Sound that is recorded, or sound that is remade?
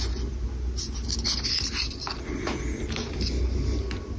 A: recorded